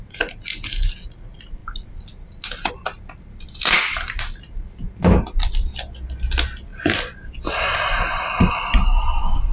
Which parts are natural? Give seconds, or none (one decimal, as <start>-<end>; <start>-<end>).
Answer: 0.0-9.5